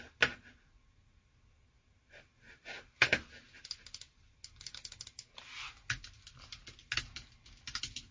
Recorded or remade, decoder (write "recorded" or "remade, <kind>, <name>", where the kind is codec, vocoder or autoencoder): recorded